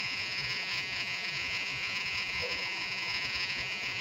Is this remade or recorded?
remade